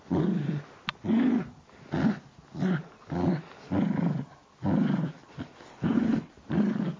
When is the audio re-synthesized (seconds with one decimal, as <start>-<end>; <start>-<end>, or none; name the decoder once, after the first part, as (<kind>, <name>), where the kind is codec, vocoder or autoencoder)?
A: 5.7-6.3 (codec, HILCodec)